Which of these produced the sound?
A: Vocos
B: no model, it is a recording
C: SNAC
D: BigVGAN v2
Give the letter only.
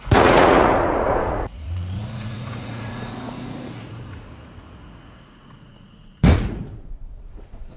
A